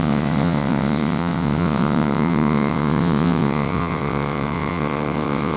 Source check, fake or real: fake